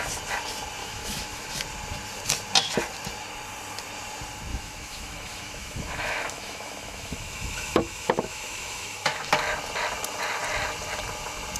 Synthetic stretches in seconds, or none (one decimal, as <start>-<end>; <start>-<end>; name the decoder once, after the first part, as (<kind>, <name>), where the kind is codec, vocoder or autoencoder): 0.8-1.6 (autoencoder, DAC-VAE); 4.5-9.3